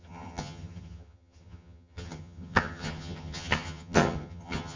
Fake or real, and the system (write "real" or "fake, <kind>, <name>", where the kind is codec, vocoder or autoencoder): fake, vocoder, HiFi-GAN